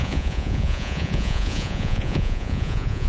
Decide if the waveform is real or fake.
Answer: fake